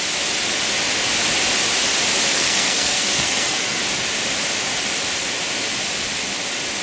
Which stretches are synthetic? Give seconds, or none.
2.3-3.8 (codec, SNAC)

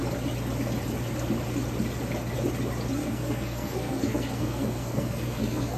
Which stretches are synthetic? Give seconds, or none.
3.0-5.8 (codec, SNAC)

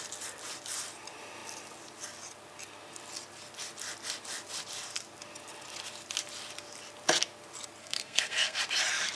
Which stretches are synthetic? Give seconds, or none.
7.8-8.6 (codec, SNAC)

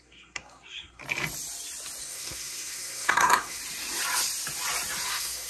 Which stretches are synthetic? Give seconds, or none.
0.0-1.0 (codec, SNAC); 2.0-3.6; 5.1-5.5

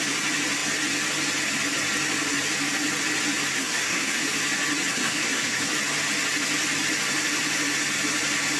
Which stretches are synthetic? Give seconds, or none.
3.5-4.2 (codec, SNAC); 4.9-5.7